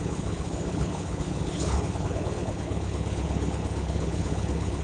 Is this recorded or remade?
remade